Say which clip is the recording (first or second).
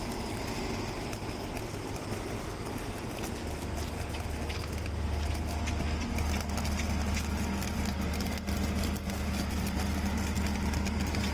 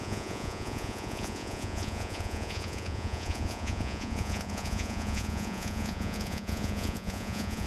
first